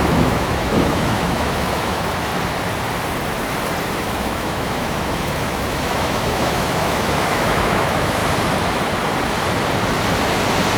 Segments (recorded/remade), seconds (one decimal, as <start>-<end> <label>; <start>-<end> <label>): 0.0-2.3 remade; 2.3-4.0 recorded; 4.0-8.2 remade; 8.2-10.8 recorded